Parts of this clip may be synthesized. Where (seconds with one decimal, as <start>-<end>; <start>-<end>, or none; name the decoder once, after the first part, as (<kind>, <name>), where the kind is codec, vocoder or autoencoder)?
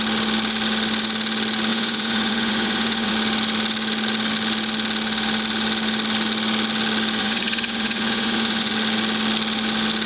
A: 1.7-3.1 (vocoder, Vocos); 7.2-8.7